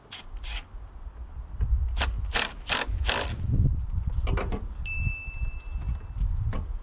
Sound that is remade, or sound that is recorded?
recorded